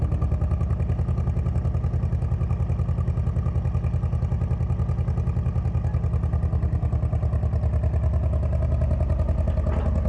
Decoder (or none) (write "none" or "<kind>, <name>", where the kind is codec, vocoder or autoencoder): none